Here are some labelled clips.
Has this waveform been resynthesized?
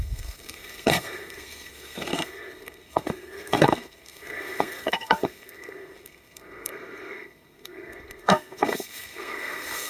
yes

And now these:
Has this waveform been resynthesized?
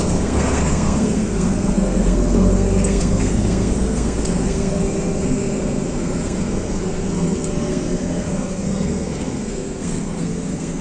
yes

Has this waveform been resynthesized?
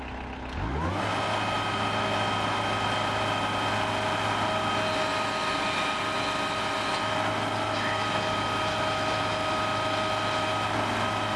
no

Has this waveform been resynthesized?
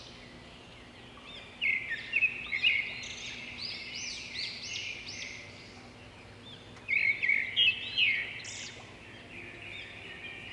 no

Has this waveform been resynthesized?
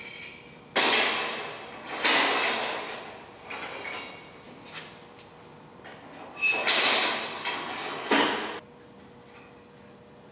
no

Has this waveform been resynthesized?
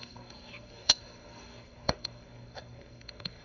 yes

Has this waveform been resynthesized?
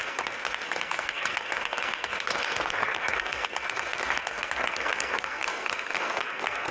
yes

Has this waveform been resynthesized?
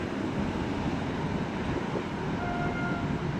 no